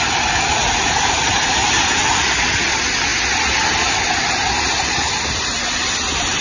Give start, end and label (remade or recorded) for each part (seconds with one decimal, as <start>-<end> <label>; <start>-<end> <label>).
0.0-6.4 recorded